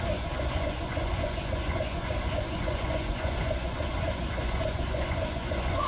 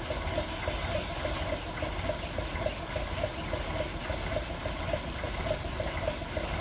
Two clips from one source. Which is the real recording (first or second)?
second